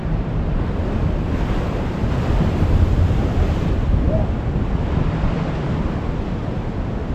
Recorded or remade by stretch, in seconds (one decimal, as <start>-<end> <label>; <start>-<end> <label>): 0.0-1.6 remade; 1.6-2.0 recorded; 2.0-6.1 remade; 6.1-7.1 recorded